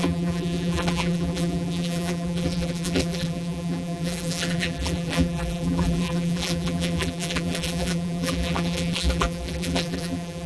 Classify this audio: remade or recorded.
remade